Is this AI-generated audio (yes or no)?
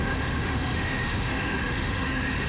yes